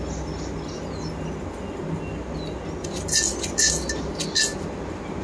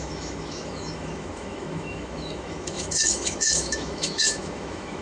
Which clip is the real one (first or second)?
first